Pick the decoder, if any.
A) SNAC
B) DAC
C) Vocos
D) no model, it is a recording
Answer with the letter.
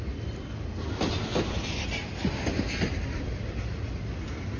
D